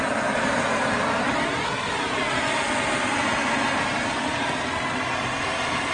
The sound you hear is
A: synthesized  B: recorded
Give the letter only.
B